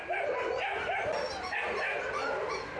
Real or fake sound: real